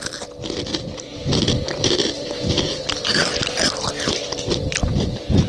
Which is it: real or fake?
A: real